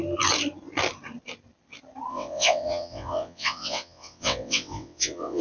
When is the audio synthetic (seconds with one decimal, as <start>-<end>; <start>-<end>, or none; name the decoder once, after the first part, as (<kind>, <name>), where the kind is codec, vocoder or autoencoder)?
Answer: 2.1-5.4 (vocoder, WaveNeXt)